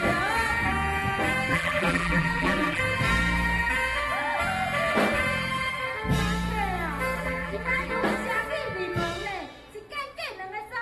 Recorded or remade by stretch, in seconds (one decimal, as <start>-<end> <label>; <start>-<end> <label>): 0.0-1.5 recorded; 1.5-2.8 remade; 2.8-7.2 recorded; 7.2-7.9 remade; 7.9-10.8 recorded